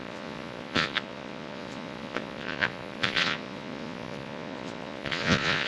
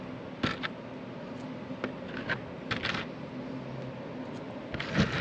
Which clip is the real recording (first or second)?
second